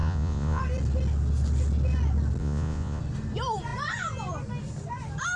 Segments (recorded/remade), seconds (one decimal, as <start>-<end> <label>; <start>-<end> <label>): 0.0-0.6 remade; 0.6-2.4 recorded; 2.4-3.0 remade; 3.0-5.4 recorded